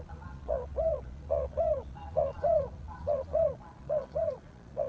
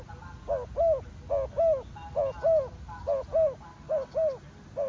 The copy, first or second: first